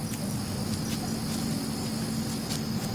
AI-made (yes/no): no